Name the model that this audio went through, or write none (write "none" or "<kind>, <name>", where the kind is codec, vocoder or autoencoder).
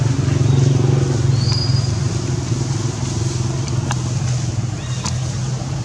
none